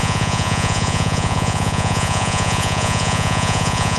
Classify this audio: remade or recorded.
remade